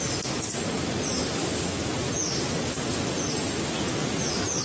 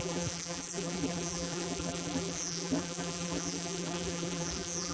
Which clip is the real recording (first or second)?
first